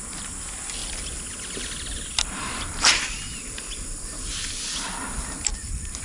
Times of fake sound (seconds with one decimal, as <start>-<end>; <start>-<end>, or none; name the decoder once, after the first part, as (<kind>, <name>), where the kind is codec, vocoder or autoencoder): 0.0-0.8 (vocoder, BigVGAN v2); 2.2-4.3; 5.1-6.0